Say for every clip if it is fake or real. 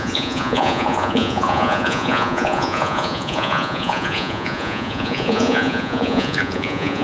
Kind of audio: fake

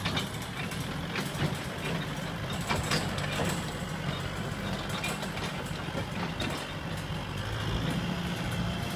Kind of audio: real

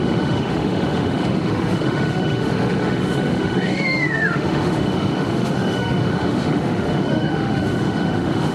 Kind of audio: fake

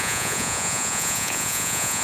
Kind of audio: fake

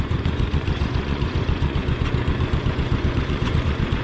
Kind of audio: fake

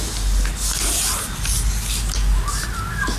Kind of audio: real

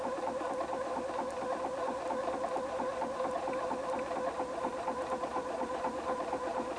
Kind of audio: real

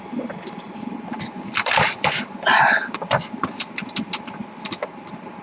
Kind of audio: fake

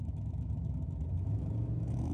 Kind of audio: fake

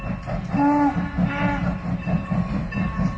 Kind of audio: real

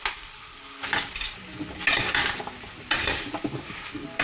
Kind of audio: real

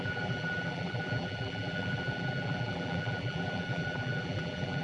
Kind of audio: fake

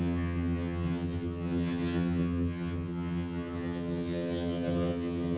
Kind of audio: fake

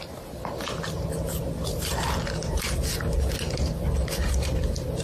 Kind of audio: real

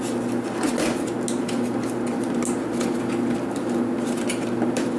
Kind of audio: real